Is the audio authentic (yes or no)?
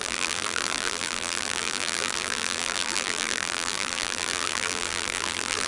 no